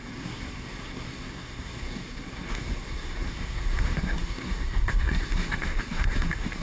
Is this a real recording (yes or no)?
no